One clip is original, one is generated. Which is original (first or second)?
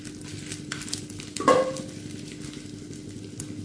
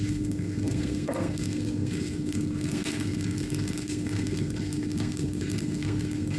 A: first